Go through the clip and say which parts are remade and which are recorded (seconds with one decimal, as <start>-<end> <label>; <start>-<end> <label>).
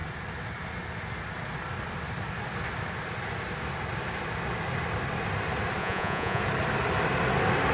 0.0-5.8 recorded; 5.8-6.4 remade; 6.4-7.7 recorded